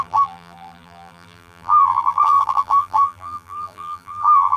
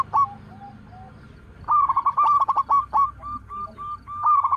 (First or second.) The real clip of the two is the second